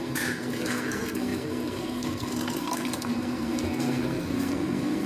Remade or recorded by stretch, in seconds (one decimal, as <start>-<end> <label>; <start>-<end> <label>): 0.0-5.1 remade